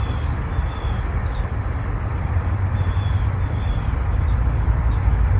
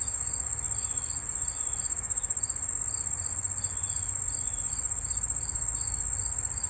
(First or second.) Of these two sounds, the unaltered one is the second